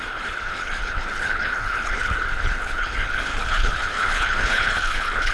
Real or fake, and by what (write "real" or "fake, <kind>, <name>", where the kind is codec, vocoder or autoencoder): fake, codec, HILCodec